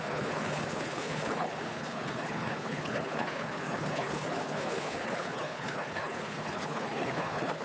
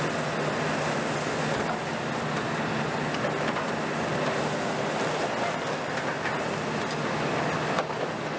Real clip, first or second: second